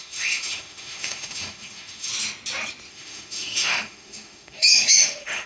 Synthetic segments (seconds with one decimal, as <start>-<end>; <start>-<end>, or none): 0.0-2.1; 2.9-5.5